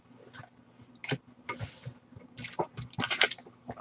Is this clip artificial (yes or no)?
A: yes